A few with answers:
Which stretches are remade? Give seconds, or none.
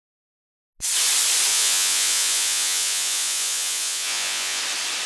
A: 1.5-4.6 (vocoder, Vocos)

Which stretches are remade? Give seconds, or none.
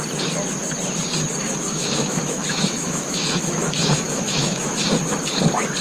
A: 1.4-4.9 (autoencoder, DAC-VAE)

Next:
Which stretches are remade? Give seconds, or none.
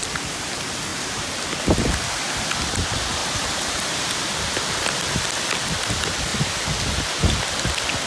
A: 0.9-1.5 (vocoder, BigVGAN v2); 3.2-4.3